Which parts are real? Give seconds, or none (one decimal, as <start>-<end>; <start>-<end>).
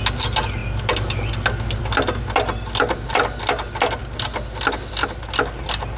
0.0-6.0